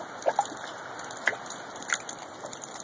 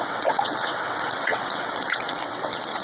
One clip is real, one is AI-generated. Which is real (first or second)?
first